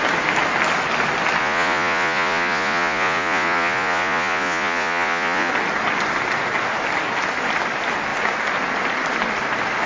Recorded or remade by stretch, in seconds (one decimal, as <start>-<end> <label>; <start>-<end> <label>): 0.0-1.4 recorded; 1.4-5.5 remade; 5.5-9.9 recorded